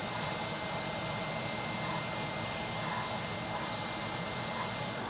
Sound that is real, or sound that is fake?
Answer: real